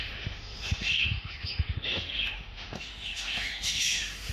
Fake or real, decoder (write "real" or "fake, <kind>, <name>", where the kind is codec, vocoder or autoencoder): fake, autoencoder, DAC-VAE